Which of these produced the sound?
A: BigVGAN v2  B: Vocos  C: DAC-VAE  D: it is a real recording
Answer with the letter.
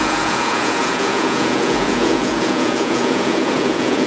B